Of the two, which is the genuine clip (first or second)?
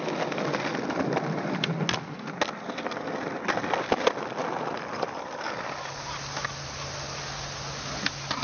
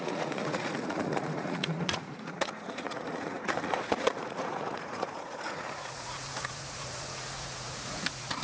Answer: first